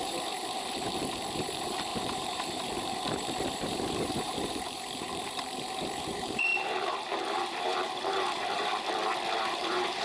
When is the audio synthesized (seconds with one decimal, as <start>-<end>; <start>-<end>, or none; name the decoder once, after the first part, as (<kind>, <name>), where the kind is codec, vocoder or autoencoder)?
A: 0.0-8.7 (vocoder, BigVGAN v2); 9.4-10.0